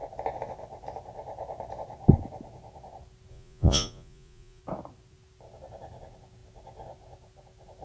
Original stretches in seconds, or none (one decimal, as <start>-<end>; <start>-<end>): 0.0-3.3; 4.6-7.8